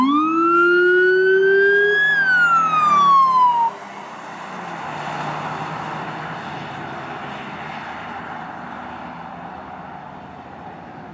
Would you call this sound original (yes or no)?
yes